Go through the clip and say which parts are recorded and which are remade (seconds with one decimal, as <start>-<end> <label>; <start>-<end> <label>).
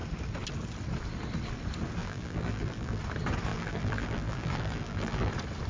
0.0-2.0 recorded; 2.0-3.0 remade; 3.0-3.5 recorded; 3.5-5.3 remade; 5.3-5.7 recorded